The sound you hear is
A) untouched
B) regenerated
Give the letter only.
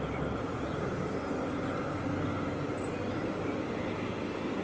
A